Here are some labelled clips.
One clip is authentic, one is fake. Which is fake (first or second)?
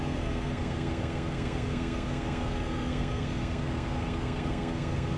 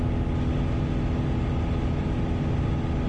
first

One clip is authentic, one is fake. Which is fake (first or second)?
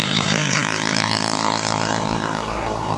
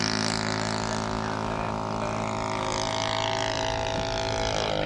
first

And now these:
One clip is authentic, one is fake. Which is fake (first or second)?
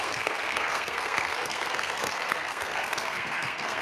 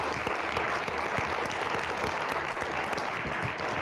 first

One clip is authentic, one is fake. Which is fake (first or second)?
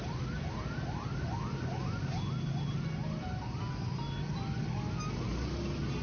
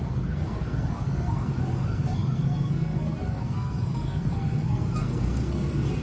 second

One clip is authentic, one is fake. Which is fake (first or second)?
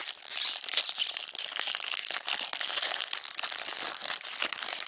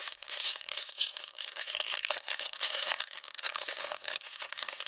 second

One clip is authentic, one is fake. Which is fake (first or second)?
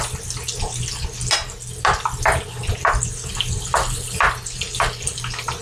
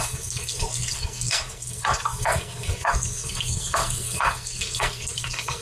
second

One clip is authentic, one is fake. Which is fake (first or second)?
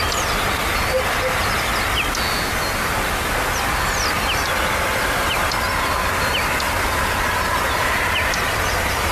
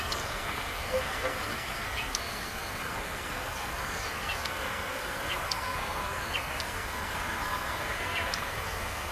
second